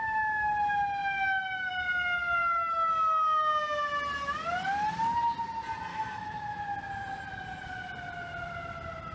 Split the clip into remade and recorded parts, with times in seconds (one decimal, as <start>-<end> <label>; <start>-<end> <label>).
0.0-2.4 recorded; 2.4-2.9 remade; 2.9-5.9 recorded; 5.9-6.6 remade; 6.6-9.1 recorded